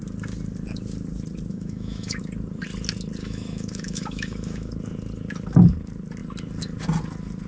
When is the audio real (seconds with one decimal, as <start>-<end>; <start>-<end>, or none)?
0.0-1.5; 2.2-3.2; 4.7-7.5